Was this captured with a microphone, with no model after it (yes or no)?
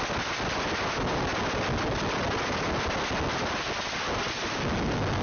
yes